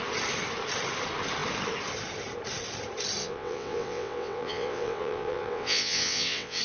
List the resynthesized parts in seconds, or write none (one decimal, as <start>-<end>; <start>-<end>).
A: 3.2-6.6